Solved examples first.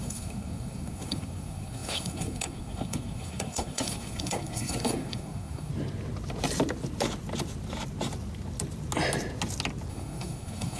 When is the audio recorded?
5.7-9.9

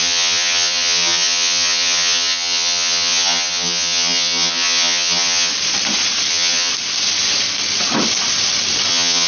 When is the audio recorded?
5.5-6.3; 6.7-8.9

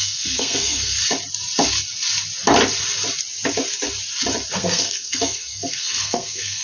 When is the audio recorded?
1.0-4.5

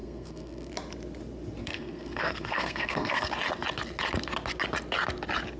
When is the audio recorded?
0.7-1.6; 3.3-5.6

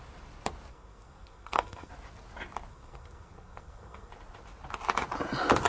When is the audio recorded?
0.0-0.7; 1.9-2.7; 4.1-5.7

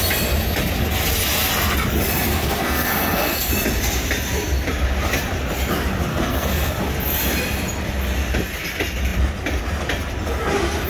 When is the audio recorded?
0.0-2.3; 3.5-6.1; 6.7-10.9

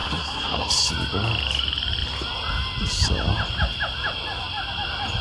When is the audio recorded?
0.9-5.2